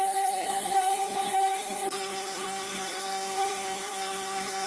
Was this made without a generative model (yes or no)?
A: no